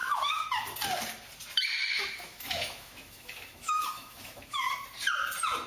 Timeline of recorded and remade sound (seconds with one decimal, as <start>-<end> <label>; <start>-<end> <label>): 0.0-0.5 remade; 0.5-1.8 recorded; 1.8-4.7 remade; 4.7-5.7 recorded